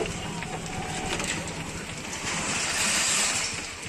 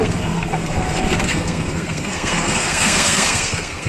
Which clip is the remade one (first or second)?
second